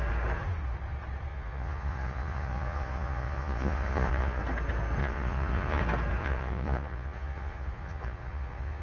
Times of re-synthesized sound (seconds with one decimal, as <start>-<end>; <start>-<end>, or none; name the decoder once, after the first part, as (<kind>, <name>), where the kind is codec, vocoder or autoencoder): 1.3-4.4 (vocoder, Vocos); 5.0-5.8; 6.2-8.8